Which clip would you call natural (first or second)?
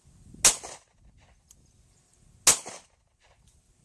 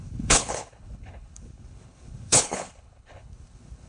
first